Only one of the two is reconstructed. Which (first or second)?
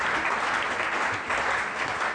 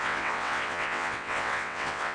second